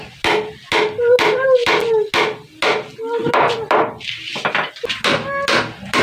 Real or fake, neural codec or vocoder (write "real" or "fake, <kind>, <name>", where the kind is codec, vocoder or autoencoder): real